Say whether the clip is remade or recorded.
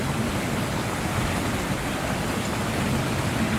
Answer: recorded